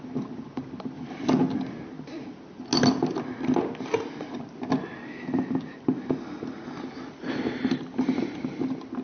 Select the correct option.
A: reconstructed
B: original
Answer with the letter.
B